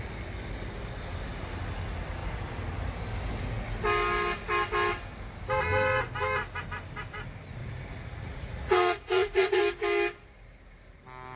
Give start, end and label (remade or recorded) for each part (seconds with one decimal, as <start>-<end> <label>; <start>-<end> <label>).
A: 0.0-7.6 recorded; 7.6-9.6 remade; 9.6-11.4 recorded